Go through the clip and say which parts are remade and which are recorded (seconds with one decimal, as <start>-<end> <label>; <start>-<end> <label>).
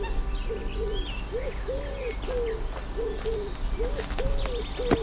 0.0-5.0 recorded